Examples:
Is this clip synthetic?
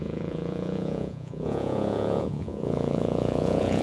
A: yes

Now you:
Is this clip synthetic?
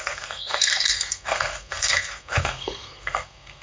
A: yes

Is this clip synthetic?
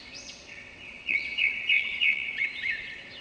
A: yes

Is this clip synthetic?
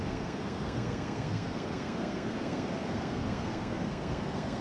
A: yes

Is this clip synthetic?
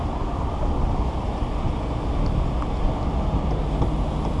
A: no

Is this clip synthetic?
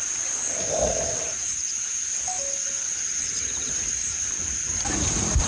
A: no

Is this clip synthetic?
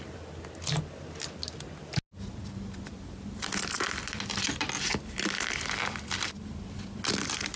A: no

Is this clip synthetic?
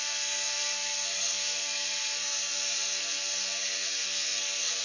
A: yes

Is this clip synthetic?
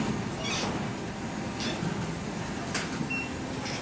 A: no